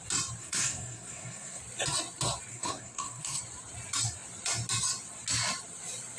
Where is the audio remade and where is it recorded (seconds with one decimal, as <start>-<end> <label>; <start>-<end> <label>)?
0.0-0.4 recorded; 0.4-1.6 remade; 1.6-2.5 recorded; 2.5-3.4 remade; 3.4-6.2 recorded